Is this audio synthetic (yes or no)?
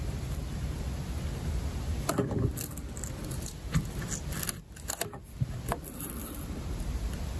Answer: no